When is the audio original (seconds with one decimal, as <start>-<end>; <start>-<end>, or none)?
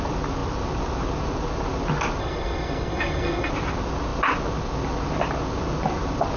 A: 0.0-2.2; 3.5-6.4